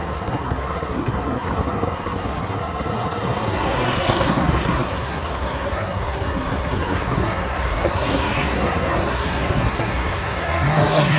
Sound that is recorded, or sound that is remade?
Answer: remade